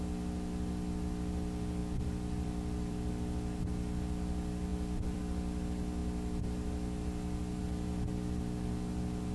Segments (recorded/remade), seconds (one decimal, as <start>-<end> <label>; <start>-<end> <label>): 0.0-1.8 recorded; 1.8-3.1 remade; 3.1-4.7 recorded; 4.7-5.2 remade; 5.2-9.3 recorded